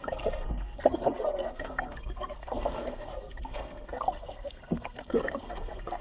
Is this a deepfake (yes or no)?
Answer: yes